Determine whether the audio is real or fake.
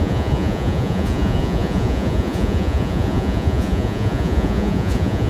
fake